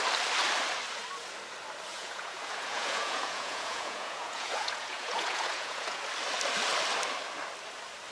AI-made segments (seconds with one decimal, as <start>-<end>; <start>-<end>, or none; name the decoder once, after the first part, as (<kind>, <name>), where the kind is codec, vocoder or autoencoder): 1.9-6.0 (vocoder, Vocos)